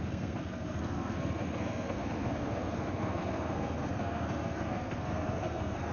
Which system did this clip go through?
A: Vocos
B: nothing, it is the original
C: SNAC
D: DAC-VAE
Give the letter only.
C